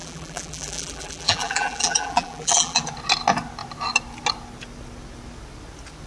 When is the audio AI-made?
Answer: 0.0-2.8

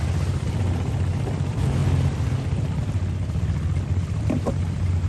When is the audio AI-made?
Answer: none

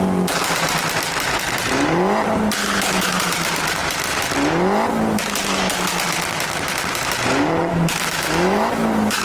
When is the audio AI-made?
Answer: 2.6-3.3; 7.7-9.2

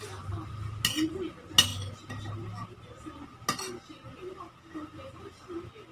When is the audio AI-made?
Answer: none

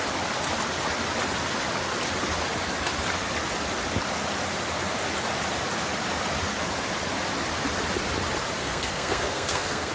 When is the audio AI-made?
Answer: 8.6-9.9

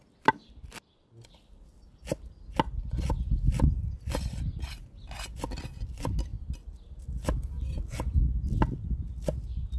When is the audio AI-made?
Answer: none

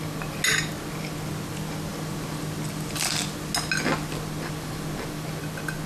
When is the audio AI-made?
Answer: none

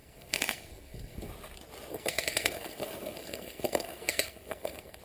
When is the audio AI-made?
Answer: 0.0-1.3; 1.9-5.0